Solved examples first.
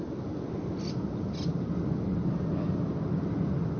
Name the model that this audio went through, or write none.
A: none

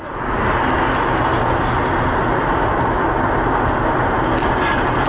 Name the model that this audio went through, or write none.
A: none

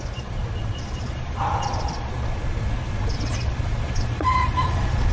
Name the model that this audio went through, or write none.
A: vocoder, Vocos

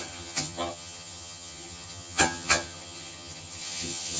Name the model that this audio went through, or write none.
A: vocoder, HiFi-GAN